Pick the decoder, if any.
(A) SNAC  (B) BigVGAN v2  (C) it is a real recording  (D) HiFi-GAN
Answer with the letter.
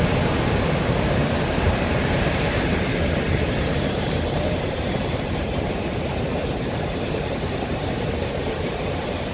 B